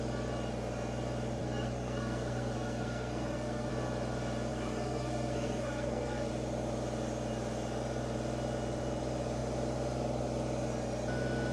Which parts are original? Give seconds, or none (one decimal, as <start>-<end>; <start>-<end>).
0.0-1.4; 3.7-4.5; 6.3-11.5